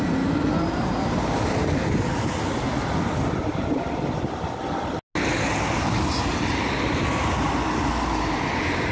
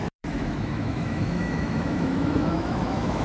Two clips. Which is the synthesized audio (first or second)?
second